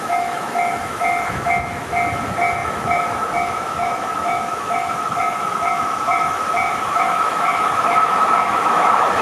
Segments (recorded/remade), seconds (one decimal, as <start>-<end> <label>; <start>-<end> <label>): 0.0-9.2 remade